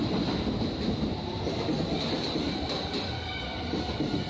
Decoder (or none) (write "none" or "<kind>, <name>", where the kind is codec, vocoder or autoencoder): none